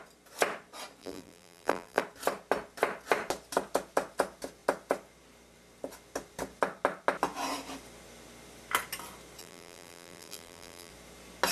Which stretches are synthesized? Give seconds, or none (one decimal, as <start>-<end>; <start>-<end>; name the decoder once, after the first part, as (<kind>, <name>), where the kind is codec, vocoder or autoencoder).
1.0-2.0 (vocoder, BigVGAN v2); 9.4-10.9